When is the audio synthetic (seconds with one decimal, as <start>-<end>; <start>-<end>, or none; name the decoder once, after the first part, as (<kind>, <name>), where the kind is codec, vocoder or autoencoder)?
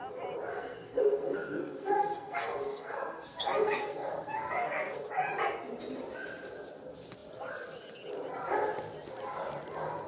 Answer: 0.5-5.1 (codec, SNAC)